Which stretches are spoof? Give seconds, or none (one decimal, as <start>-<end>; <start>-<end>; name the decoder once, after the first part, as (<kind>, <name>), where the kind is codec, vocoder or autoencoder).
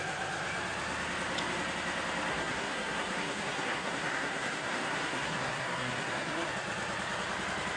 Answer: 2.3-6.5 (codec, SNAC)